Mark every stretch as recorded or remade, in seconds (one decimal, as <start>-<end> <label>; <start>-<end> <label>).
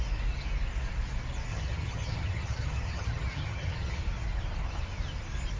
0.0-1.5 recorded; 1.5-4.0 remade; 4.0-5.6 recorded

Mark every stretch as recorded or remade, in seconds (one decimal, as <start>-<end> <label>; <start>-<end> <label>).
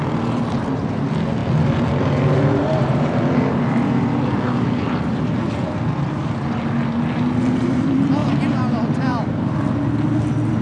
0.0-8.2 recorded; 8.2-9.6 remade; 9.6-10.6 recorded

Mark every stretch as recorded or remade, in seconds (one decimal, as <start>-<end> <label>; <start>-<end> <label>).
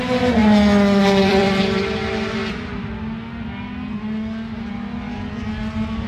0.0-0.4 remade; 0.4-1.0 recorded; 1.0-2.4 remade; 2.4-6.1 recorded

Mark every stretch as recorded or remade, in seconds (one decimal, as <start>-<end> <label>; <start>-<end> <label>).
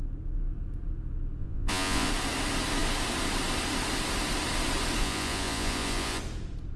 0.0-1.4 recorded; 1.4-2.1 remade; 2.1-5.0 recorded; 5.0-6.2 remade; 6.2-6.8 recorded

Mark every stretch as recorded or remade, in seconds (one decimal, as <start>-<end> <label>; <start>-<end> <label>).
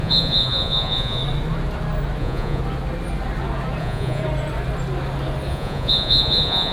0.0-1.2 remade; 1.2-2.2 recorded; 2.2-2.6 remade; 2.6-3.8 recorded; 3.8-4.2 remade; 4.2-5.5 recorded; 5.5-6.7 remade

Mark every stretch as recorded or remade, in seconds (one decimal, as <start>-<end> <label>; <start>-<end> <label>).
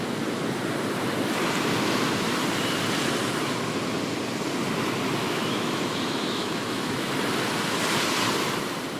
0.0-5.2 recorded; 5.2-7.1 remade; 7.1-9.0 recorded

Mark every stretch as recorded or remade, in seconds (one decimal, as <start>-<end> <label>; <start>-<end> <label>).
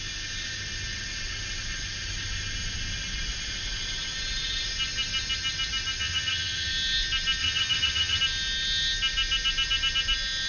0.0-6.0 recorded; 6.0-6.7 remade; 6.7-7.4 recorded; 7.4-8.2 remade; 8.2-10.5 recorded